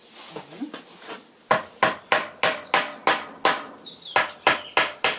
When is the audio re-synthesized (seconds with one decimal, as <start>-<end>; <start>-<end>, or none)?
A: none